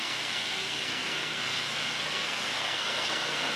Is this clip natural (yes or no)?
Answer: no